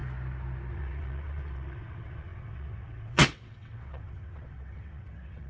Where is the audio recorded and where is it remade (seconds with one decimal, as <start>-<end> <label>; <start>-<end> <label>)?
0.0-0.7 recorded; 0.7-5.5 remade